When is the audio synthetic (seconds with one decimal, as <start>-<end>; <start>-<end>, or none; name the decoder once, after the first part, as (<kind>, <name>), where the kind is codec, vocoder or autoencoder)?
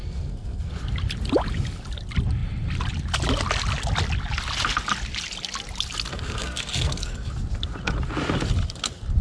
0.0-0.7 (codec, SNAC); 6.1-7.3